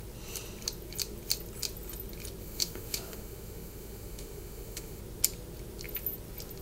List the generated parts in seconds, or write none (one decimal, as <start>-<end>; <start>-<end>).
2.4-5.0